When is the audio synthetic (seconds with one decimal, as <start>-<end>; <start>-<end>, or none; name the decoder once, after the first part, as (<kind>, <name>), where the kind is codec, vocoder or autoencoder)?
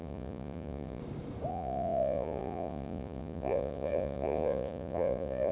0.0-1.0 (vocoder, Vocos); 1.5-5.5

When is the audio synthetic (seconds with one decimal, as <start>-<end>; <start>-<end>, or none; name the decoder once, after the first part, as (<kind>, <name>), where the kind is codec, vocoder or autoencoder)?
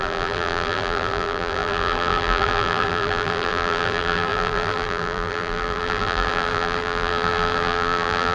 0.0-8.3 (vocoder, BigVGAN v2)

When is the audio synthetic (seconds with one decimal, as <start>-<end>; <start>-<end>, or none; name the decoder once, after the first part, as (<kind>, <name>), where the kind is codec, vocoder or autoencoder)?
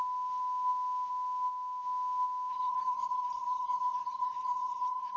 2.5-5.2 (codec, HILCodec)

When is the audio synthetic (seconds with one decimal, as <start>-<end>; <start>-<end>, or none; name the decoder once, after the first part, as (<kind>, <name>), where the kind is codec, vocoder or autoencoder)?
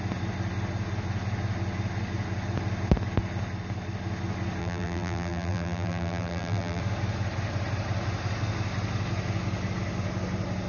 4.6-6.8 (vocoder, BigVGAN v2)